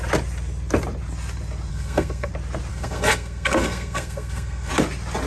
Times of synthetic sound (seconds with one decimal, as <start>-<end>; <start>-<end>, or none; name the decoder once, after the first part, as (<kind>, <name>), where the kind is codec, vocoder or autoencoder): 1.7-2.3 (codec, SNAC); 2.7-4.7